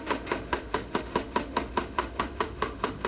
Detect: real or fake fake